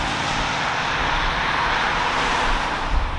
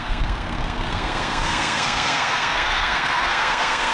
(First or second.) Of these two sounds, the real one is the first